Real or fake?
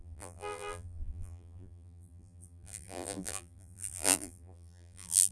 fake